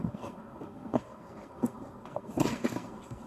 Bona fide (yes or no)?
no